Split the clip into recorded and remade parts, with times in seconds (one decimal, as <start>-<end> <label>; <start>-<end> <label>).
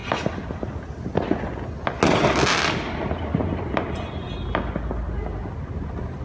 0.0-6.2 recorded